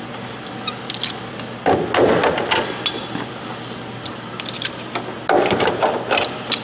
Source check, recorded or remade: recorded